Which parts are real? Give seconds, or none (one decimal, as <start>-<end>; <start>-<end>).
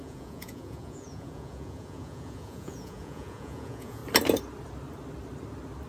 4.0-5.9